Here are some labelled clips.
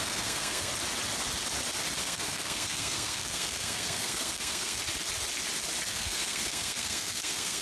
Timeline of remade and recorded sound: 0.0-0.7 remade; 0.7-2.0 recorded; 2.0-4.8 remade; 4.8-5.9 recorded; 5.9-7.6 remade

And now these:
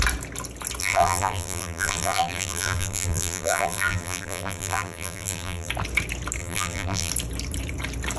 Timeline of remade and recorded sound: 0.0-0.8 recorded; 0.8-5.7 remade; 5.7-6.4 recorded; 6.4-7.1 remade; 7.1-8.2 recorded

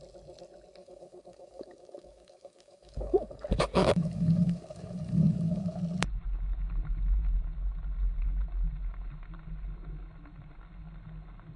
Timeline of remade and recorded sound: 0.0-0.8 recorded; 0.8-5.8 remade; 5.8-11.6 recorded

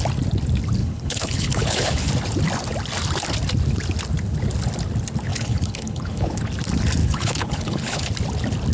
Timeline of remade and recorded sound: 0.0-0.8 recorded; 0.8-2.1 remade; 2.1-5.3 recorded; 5.3-6.4 remade; 6.4-7.0 recorded; 7.0-8.1 remade; 8.1-8.7 recorded

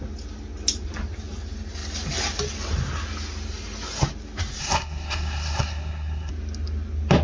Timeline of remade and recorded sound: 0.0-4.6 recorded; 4.6-6.3 remade; 6.3-7.2 recorded

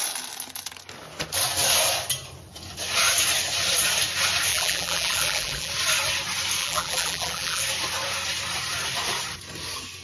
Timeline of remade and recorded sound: 0.0-4.5 recorded; 4.5-5.7 remade; 5.7-6.6 recorded; 6.6-7.6 remade; 7.6-10.0 recorded

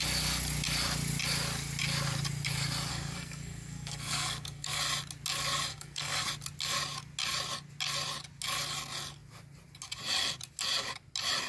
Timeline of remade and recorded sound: 0.0-2.9 recorded; 2.9-4.8 remade; 4.8-5.7 recorded; 5.7-6.3 remade; 6.3-11.5 recorded